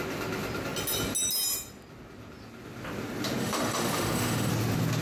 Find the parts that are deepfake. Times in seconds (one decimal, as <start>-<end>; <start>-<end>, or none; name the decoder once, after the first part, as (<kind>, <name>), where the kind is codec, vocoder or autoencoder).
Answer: 3.4-4.5 (autoencoder, DAC-VAE)